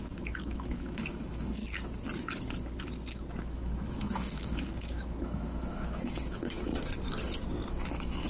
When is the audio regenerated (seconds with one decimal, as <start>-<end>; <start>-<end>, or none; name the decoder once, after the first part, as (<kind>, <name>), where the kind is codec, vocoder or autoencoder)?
0.0-1.6 (autoencoder, DAC-VAE); 3.4-6.7; 7.7-8.3